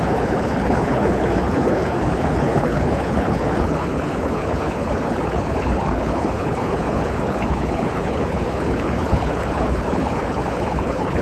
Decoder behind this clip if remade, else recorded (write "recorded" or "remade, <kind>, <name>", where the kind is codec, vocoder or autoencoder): remade, codec, HILCodec